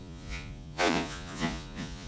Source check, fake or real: fake